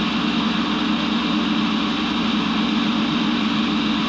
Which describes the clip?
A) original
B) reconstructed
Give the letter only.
A